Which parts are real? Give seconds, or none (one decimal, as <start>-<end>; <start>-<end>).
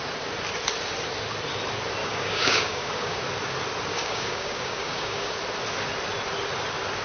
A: 0.0-2.0; 3.2-3.9; 5.3-7.0